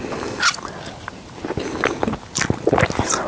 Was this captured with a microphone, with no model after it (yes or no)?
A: yes